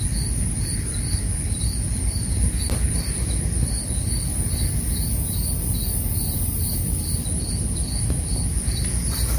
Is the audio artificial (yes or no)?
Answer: yes